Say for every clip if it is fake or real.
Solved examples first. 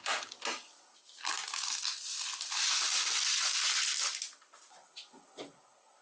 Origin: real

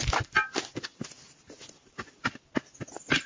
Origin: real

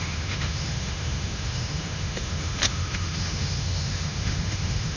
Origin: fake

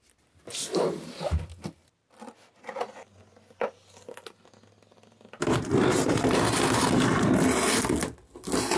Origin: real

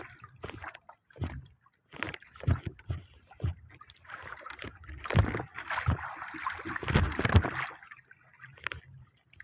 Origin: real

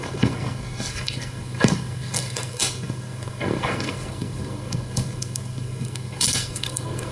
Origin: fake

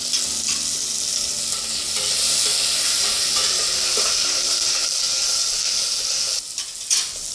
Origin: real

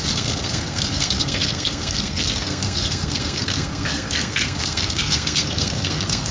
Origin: fake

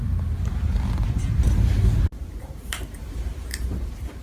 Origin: fake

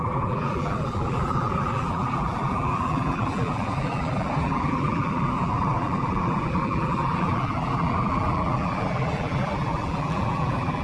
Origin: fake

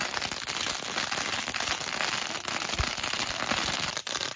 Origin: real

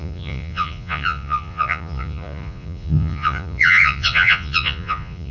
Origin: fake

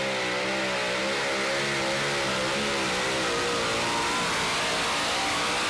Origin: real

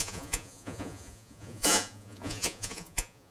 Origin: fake